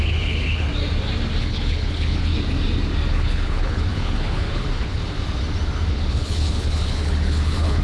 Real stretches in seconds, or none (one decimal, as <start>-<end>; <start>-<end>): 0.7-1.4; 2.3-3.1; 5.0-5.9